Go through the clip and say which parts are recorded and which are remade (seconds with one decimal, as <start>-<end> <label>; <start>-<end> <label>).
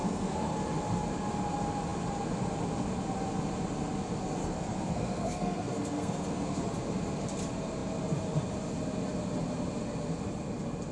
0.0-0.6 remade; 0.6-4.4 recorded; 4.4-6.6 remade; 6.6-10.9 recorded